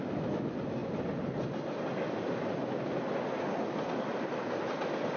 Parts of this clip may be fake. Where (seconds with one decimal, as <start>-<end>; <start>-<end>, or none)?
none